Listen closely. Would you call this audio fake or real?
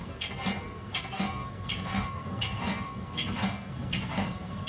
fake